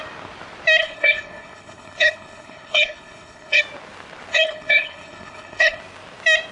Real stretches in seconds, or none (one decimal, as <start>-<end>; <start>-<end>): 0.0-0.8; 3.6-4.3; 5.8-6.5